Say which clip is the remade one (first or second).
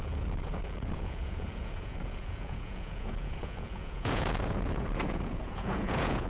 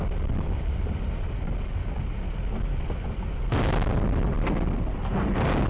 first